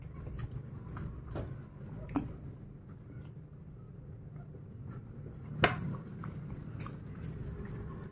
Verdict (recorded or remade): recorded